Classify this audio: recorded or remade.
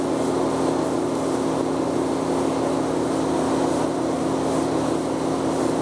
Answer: recorded